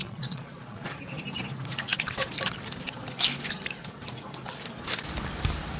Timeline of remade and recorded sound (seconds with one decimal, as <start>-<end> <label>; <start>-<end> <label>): 0.0-0.9 remade; 0.9-5.8 recorded